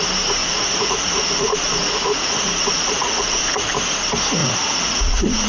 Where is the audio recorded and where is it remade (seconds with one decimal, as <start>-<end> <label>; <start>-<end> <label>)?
0.0-0.4 recorded; 0.4-3.7 remade; 3.7-4.4 recorded; 4.4-5.5 remade